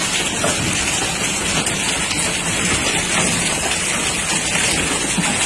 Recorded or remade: recorded